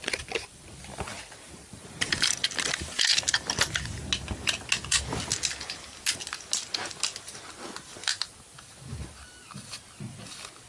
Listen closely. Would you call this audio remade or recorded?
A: recorded